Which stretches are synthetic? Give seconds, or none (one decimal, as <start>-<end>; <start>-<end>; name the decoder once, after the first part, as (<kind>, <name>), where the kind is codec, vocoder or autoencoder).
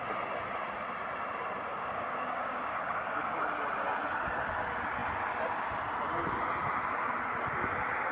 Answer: 1.7-3.4 (codec, DAC)